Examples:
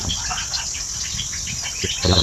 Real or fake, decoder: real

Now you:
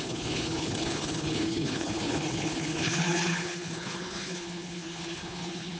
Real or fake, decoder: fake, codec, HILCodec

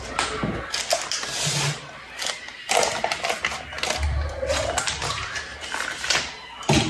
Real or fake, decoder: real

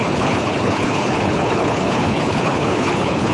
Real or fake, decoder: fake, codec, HILCodec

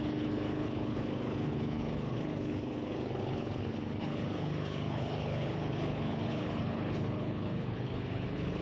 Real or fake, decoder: fake, codec, HILCodec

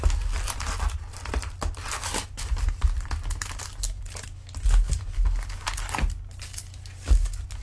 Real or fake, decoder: real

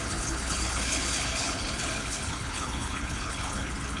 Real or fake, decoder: fake, codec, HILCodec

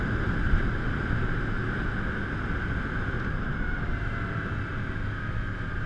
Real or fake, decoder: real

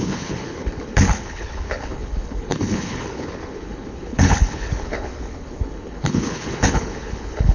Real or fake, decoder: fake, codec, HILCodec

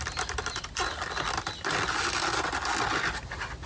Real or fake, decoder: real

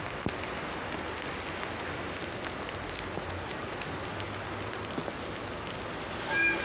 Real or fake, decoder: real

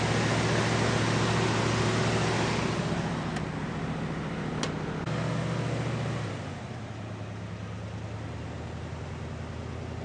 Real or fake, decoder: real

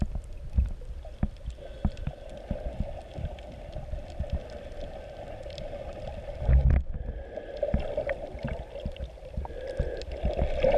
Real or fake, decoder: real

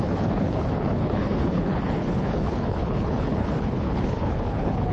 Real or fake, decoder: fake, codec, HILCodec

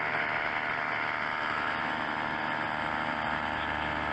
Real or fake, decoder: real